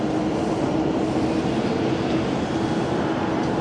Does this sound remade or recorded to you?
recorded